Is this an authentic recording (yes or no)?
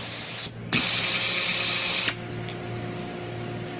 yes